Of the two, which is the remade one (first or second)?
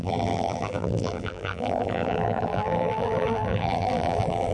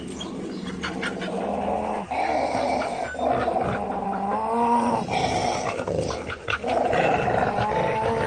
first